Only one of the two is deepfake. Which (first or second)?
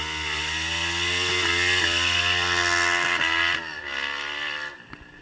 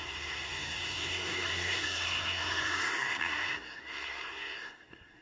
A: second